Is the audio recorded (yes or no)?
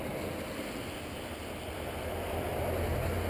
yes